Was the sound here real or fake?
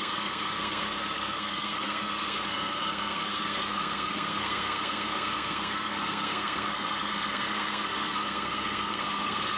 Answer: fake